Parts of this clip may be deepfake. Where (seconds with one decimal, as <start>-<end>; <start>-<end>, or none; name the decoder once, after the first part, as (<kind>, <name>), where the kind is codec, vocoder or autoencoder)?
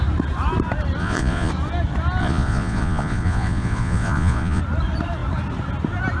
1.0-1.5 (vocoder, Vocos); 2.2-4.6